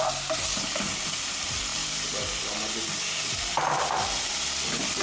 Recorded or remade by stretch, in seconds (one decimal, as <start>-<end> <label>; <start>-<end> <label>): 0.0-5.0 recorded